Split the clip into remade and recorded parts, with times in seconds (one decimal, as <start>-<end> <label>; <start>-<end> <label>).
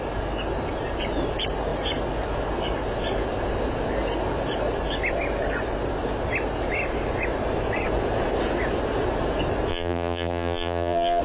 0.0-9.7 recorded; 9.7-11.2 remade